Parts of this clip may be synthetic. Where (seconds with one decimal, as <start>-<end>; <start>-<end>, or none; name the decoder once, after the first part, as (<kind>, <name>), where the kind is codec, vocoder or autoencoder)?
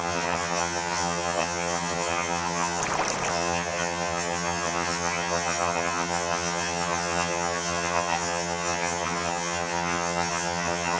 0.0-2.8 (vocoder, HiFi-GAN); 3.3-11.0